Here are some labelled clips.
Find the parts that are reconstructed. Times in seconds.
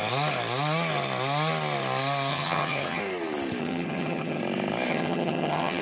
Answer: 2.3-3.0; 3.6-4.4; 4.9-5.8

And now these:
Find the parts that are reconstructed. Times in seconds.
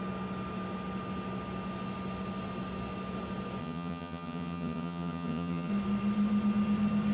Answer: 3.6-5.7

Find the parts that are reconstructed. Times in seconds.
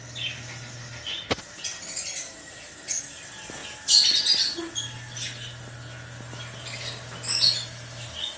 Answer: none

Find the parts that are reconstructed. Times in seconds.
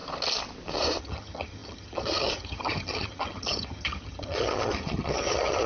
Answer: 1.0-5.7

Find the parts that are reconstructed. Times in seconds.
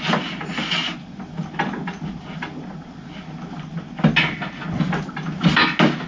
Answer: none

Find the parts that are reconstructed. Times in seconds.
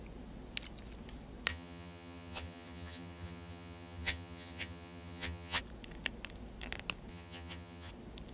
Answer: 1.5-5.6; 7.1-7.9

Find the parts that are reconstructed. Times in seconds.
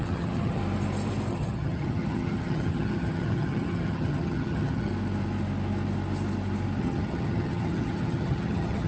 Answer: 0.0-0.6; 1.3-4.9; 6.8-8.9